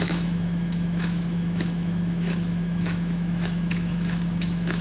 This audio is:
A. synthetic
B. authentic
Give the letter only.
A